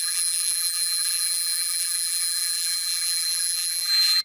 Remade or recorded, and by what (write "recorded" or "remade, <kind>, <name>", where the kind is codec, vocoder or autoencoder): remade, vocoder, BigVGAN v2